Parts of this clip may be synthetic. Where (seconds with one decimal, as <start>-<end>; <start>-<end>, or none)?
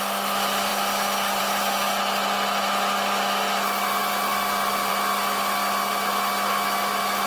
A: none